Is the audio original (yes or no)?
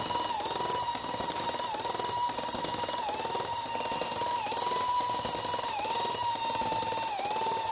yes